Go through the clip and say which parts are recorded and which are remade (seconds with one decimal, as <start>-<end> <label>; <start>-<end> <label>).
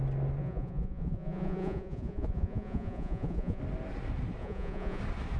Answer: 0.0-0.4 recorded; 0.4-3.6 remade; 3.6-4.4 recorded; 4.4-5.0 remade; 5.0-5.4 recorded